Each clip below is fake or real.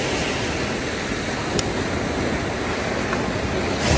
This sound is real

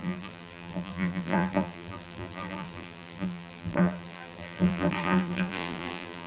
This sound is fake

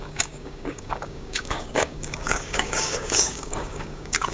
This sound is fake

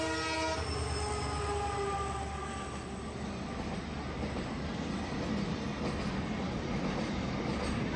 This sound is real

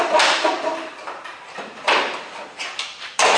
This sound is fake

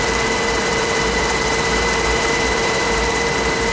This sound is fake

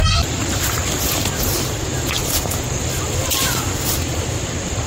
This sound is real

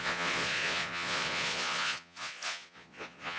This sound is fake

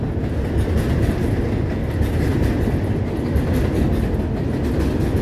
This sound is real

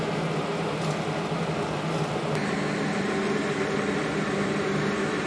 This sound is real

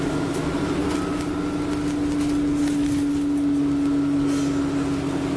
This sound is real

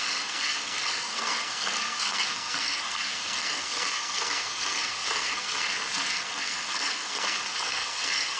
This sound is fake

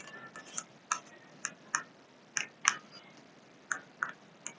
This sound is real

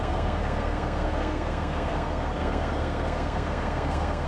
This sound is fake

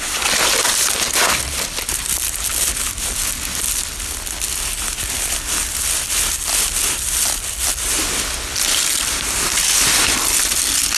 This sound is real